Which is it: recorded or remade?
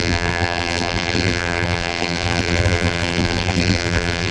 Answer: remade